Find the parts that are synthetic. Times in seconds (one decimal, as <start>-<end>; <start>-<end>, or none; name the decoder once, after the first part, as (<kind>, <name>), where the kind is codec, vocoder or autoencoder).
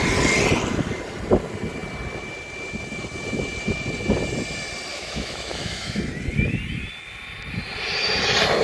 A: 4.9-6.0 (autoencoder, DAC-VAE)